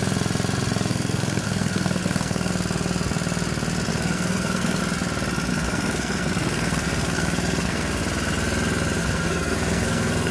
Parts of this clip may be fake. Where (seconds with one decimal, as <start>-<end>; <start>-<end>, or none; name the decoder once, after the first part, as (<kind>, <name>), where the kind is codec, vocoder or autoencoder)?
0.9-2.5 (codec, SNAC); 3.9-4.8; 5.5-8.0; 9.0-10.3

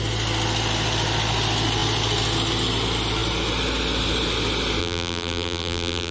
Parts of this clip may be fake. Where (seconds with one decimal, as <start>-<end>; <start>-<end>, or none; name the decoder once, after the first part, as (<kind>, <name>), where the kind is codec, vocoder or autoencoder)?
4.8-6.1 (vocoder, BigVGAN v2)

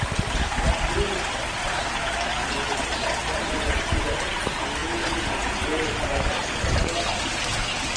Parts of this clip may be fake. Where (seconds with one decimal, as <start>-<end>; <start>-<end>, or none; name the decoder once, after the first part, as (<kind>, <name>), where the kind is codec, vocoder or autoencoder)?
4.8-5.5 (vocoder, Vocos)

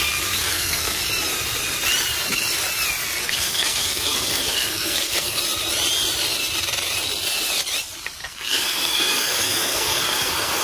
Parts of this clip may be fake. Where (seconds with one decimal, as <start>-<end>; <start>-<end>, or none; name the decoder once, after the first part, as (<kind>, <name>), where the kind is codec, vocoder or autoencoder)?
0.4-1.0 (codec, SNAC); 3.2-5.4; 8.2-10.6

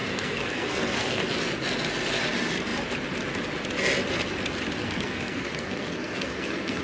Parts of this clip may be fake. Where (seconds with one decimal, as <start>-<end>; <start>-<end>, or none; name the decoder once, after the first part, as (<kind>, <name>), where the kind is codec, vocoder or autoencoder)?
0.0-1.2 (codec, SNAC); 4.8-6.8

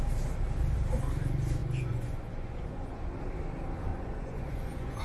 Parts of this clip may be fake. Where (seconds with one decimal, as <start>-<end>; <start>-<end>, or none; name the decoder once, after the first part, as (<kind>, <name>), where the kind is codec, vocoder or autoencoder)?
1.6-3.2 (vocoder, Vocos); 3.9-5.0

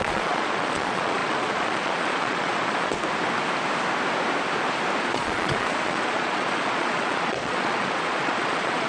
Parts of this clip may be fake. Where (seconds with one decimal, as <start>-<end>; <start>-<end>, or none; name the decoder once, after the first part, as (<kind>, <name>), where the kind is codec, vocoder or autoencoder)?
0.0-2.9 (vocoder, Vocos); 5.0-8.9